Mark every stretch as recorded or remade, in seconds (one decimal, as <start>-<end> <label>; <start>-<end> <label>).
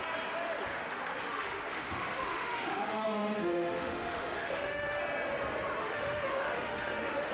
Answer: 0.0-0.7 recorded; 0.7-5.0 remade; 5.0-5.8 recorded; 5.8-7.3 remade